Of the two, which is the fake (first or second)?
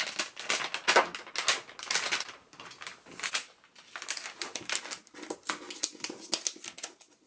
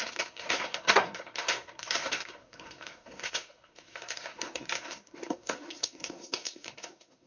second